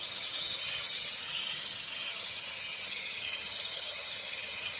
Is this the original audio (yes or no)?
no